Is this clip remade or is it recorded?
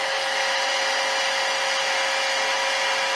recorded